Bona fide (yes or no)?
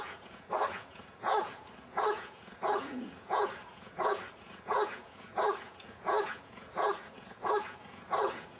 no